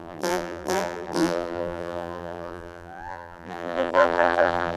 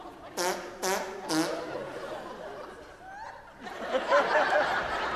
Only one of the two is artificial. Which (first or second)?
first